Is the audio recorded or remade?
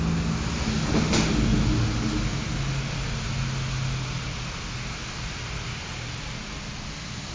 recorded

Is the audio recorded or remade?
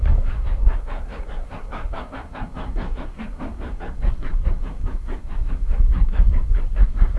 remade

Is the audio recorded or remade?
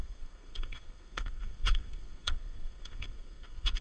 remade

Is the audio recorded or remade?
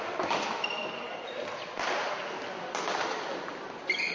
recorded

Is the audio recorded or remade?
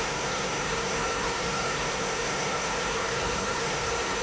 remade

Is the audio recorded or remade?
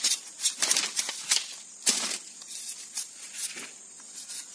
recorded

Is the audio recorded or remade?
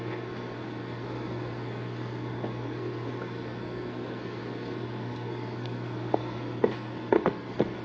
remade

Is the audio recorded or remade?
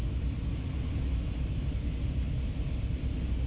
recorded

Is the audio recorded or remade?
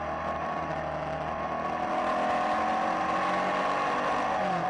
recorded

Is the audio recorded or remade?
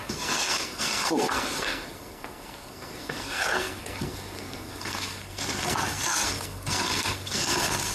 remade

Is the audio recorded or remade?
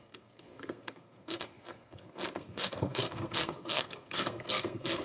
remade